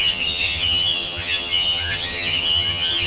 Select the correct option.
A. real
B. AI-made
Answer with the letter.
B